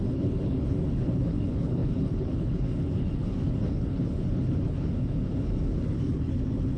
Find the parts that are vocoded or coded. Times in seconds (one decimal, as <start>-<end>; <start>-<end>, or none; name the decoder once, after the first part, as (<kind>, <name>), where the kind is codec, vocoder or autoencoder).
0.0-6.8 (codec, HILCodec)